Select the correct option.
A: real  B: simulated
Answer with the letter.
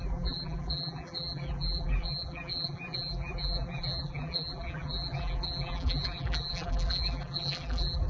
B